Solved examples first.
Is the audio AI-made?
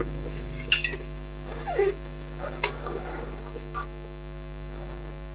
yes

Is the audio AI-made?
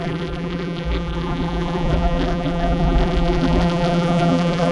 yes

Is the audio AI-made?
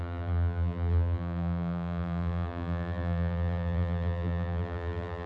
yes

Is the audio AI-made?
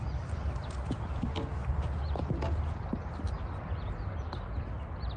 no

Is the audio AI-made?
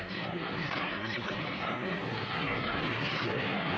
yes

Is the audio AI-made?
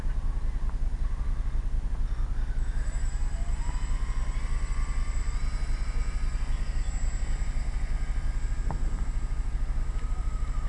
no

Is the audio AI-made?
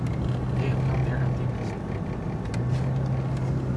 no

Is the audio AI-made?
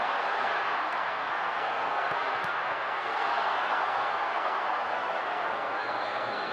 yes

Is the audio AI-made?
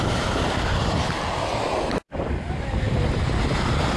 yes